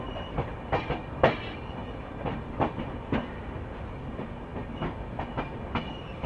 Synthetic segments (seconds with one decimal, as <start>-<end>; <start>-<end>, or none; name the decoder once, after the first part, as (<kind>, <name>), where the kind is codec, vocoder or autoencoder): none